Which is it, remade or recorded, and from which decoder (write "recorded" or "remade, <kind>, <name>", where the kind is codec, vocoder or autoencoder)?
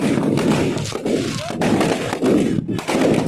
recorded